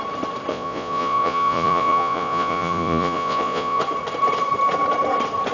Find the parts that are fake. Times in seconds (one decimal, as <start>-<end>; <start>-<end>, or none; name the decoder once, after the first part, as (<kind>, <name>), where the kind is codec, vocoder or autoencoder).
0.5-3.8 (vocoder, Vocos)